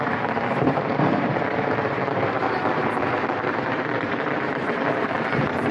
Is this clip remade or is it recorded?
remade